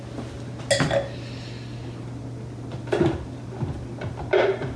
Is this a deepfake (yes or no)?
no